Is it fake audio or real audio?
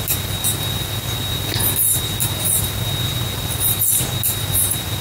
real